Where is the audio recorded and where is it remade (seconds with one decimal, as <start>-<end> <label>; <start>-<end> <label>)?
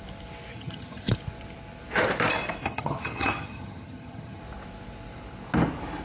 0.0-0.5 recorded; 0.5-1.1 remade; 1.1-2.6 recorded; 2.6-4.4 remade; 4.4-6.0 recorded